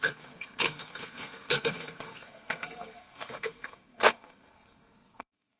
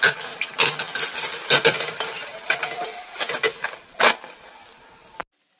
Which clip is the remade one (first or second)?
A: first